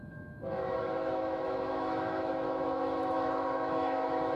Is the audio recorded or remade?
remade